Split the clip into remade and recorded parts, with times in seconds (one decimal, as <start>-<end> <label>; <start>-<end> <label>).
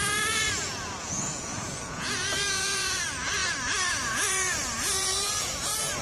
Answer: 0.0-3.4 remade; 3.4-3.9 recorded; 3.9-6.0 remade